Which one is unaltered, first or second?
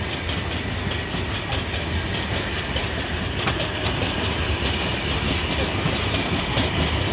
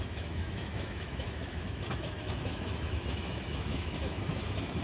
first